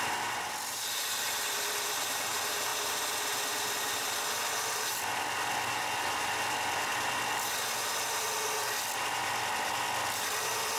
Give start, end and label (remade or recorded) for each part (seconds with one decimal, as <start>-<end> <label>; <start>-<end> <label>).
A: 0.0-10.8 recorded